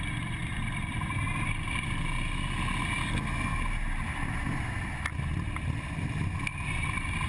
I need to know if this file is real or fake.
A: real